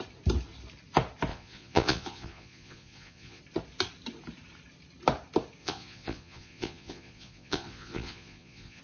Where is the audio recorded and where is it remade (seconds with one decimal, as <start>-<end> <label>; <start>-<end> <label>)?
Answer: 0.0-1.3 recorded; 1.3-3.4 remade; 3.4-5.6 recorded; 5.6-8.8 remade